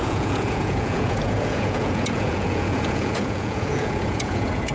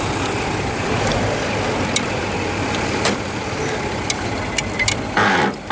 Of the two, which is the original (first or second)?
second